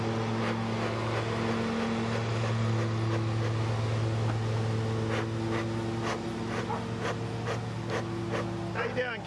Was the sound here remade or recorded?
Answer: recorded